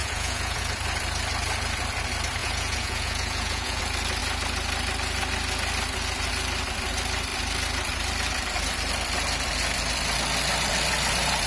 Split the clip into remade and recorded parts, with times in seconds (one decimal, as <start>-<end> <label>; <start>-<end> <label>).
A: 0.0-0.6 remade; 0.6-2.4 recorded; 2.4-3.8 remade; 3.8-11.5 recorded